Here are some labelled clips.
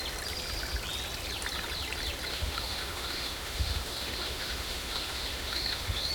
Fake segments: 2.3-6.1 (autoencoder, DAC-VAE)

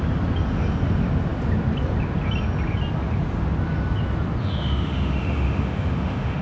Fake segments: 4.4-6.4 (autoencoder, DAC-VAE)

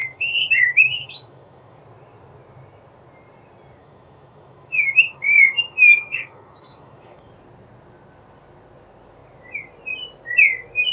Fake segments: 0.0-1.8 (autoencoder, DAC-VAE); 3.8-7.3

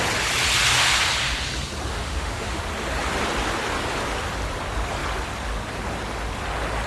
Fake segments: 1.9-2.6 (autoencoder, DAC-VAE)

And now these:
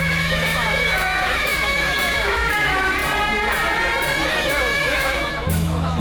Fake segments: 0.0-3.0 (autoencoder, DAC-VAE); 4.3-6.0

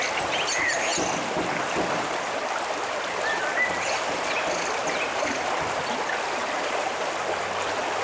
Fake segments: none